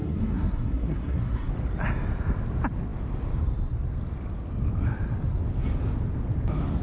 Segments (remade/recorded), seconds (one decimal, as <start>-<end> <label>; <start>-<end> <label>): 0.0-1.5 remade; 1.5-6.8 recorded